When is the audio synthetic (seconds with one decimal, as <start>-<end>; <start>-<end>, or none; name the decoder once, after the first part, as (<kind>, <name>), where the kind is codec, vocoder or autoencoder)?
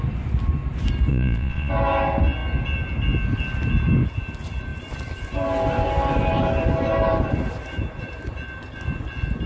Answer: 1.1-1.7 (vocoder, Vocos)